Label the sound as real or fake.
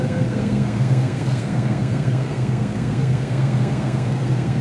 fake